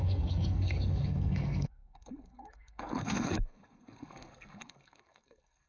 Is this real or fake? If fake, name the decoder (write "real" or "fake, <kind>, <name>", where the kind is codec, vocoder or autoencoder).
fake, codec, SNAC